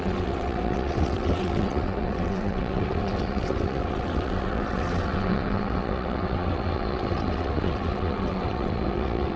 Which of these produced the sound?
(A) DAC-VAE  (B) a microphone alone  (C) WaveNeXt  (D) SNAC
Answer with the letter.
C